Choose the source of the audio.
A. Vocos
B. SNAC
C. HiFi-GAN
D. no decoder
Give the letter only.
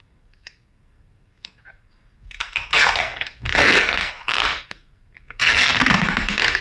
B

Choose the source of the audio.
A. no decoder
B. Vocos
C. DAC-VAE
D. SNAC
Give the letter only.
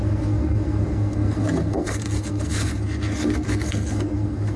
D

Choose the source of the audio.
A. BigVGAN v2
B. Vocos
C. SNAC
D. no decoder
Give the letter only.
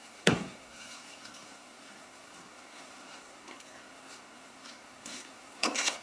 C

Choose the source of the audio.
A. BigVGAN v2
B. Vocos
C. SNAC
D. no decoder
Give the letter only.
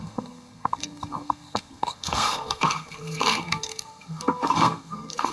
C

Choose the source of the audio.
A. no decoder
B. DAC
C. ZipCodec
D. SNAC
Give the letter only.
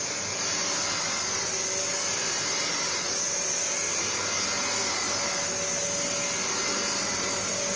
A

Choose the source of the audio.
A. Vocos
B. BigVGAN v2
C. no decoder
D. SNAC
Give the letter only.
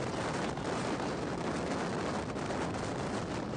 C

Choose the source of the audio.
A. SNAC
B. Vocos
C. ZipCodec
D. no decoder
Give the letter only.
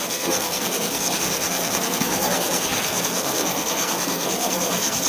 A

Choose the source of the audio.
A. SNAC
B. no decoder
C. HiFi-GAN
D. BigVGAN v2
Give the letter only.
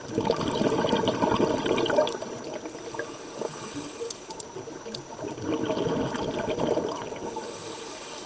B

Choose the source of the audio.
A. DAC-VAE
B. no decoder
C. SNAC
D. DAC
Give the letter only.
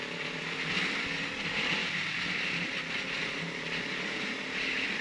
B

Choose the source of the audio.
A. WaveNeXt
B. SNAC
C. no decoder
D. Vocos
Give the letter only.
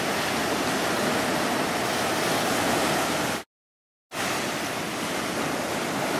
C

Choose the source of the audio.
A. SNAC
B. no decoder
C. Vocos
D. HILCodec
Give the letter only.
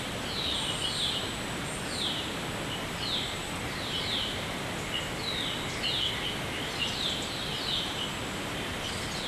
B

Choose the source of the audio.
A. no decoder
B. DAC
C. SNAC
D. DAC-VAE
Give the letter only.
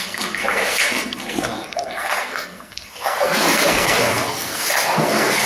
C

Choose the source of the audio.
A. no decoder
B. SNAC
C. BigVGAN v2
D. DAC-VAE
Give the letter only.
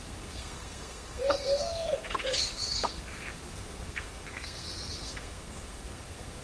B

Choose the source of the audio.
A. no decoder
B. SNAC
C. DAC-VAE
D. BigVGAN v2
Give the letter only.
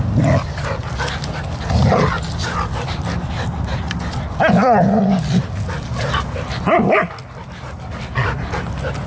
A